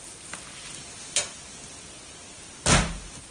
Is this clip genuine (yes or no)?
yes